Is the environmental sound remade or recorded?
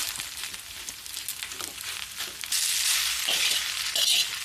recorded